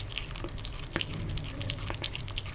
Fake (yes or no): yes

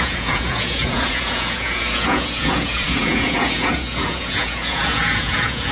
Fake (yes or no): yes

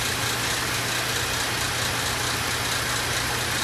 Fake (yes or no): no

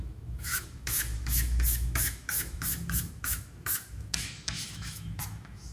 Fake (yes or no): yes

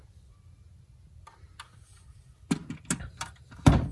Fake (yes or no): no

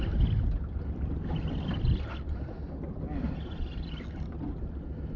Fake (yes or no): no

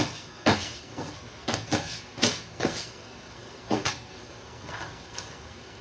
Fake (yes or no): yes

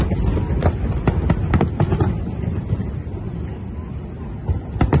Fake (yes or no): no